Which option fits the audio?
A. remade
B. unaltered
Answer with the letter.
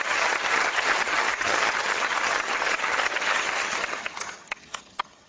A